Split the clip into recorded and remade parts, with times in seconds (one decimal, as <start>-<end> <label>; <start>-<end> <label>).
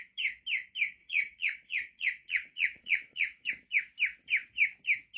0.0-1.0 recorded; 1.0-3.5 remade; 3.5-5.2 recorded